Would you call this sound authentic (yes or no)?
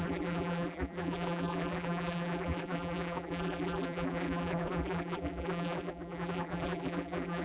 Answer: no